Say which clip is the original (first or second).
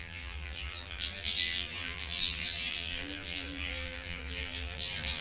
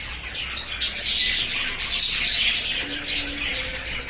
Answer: second